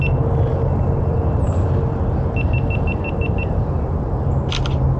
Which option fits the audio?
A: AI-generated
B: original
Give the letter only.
B